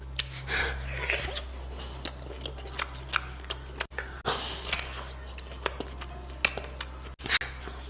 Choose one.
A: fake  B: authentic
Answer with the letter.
B